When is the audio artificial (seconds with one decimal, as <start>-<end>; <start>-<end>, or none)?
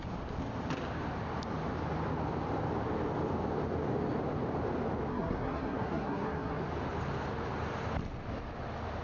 5.1-6.6